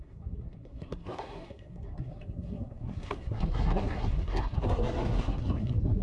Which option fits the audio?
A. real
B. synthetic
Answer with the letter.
B